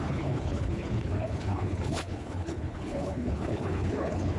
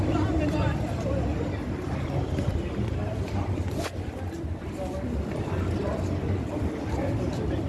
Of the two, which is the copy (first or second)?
first